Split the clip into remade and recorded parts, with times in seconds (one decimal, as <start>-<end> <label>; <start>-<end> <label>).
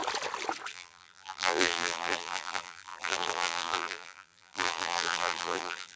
0.0-0.7 recorded; 0.7-6.0 remade